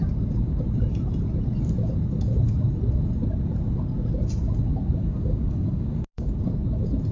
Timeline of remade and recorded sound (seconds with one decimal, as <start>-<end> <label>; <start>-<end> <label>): 0.0-5.0 recorded; 5.0-6.3 remade; 6.3-7.1 recorded